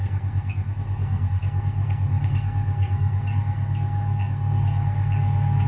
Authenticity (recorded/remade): remade